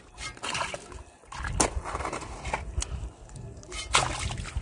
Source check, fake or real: real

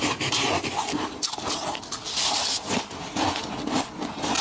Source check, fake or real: real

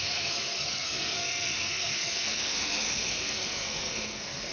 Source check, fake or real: fake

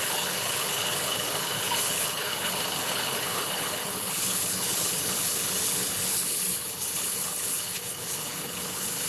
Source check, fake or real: fake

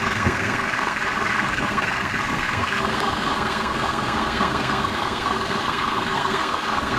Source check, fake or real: fake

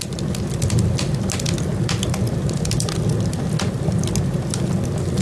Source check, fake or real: real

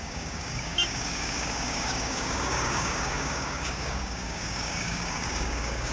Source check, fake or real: fake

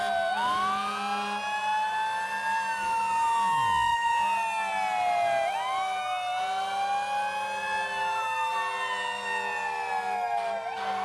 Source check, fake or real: real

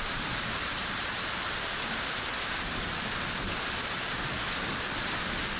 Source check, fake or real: fake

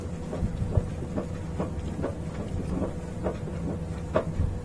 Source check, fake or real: real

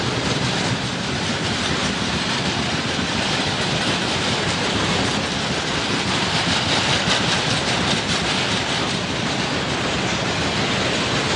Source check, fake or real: fake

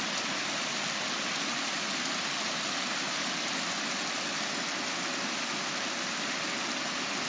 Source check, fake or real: real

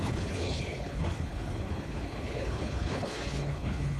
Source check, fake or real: fake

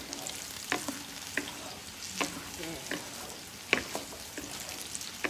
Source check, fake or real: real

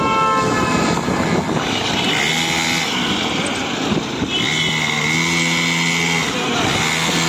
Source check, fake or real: real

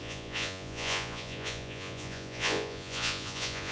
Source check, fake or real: fake